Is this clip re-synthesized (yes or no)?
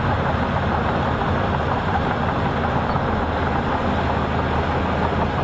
no